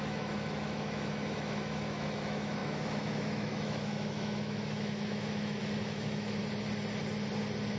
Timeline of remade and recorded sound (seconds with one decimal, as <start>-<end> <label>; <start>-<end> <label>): 0.0-6.4 remade; 6.4-7.8 recorded